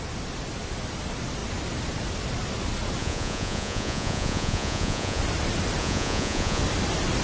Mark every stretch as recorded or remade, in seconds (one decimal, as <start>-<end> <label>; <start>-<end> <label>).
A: 0.0-3.0 recorded; 3.0-5.2 remade; 5.2-5.8 recorded; 5.8-6.6 remade; 6.6-7.2 recorded